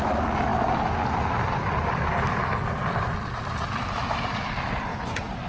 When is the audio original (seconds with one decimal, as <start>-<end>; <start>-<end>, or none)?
0.0-4.9